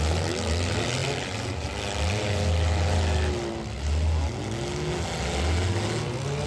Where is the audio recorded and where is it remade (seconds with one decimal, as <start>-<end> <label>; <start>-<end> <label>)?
0.0-6.5 recorded